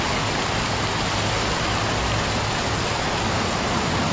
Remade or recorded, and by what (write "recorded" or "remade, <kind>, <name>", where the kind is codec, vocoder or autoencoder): recorded